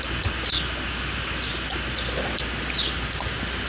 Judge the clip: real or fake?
real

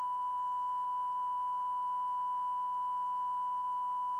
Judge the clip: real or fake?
real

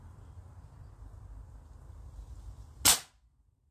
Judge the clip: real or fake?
real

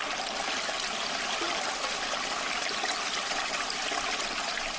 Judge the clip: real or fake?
real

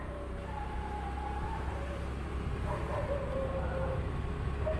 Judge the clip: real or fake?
real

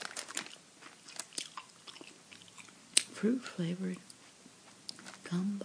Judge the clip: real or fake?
real